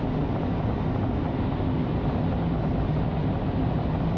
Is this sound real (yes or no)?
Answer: yes